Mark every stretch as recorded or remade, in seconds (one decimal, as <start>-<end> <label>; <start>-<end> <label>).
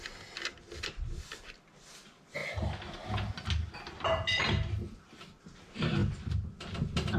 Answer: 0.0-7.2 recorded